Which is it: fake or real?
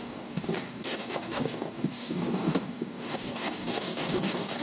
fake